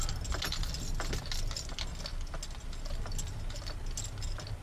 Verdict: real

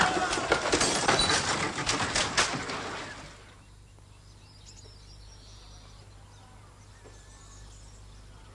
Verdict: real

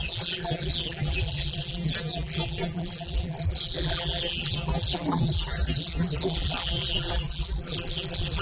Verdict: fake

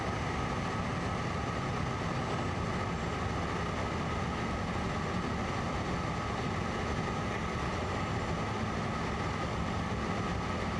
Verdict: real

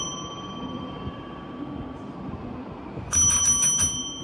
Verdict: fake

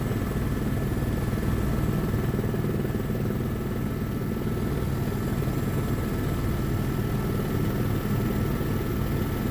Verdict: real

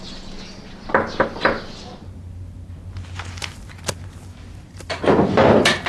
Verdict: real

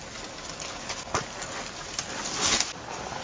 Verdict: real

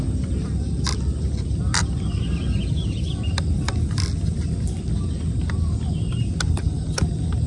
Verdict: real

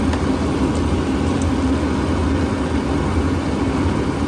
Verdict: real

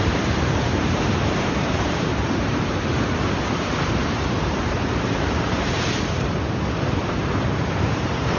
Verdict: fake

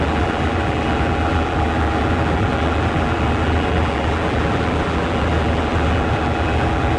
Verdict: fake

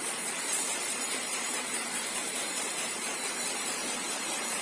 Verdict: fake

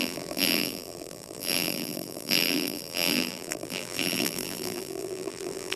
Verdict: fake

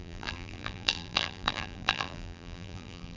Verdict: fake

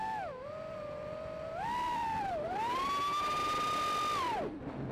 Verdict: real